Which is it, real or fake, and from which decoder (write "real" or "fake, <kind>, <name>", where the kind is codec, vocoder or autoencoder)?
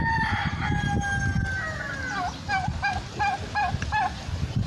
real